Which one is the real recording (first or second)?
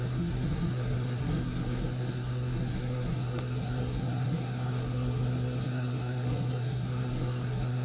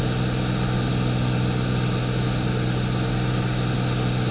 second